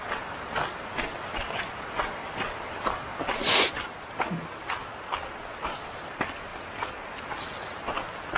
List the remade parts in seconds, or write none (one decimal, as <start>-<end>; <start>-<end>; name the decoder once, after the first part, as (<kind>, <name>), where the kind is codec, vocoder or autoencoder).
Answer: none

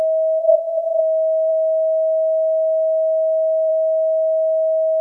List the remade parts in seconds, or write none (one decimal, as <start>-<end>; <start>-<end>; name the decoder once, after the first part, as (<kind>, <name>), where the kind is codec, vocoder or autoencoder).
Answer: 0.4-1.0 (codec, SNAC)

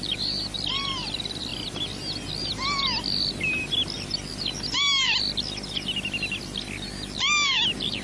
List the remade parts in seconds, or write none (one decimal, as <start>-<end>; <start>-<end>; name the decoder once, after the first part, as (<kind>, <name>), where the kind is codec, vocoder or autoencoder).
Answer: none